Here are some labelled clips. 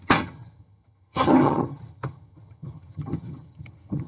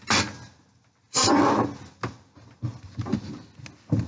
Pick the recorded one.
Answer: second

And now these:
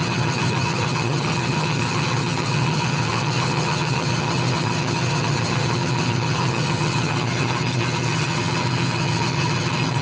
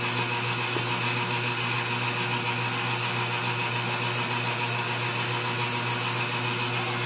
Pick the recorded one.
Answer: second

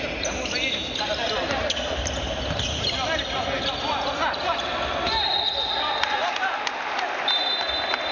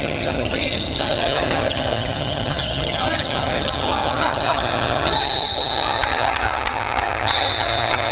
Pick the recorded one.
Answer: first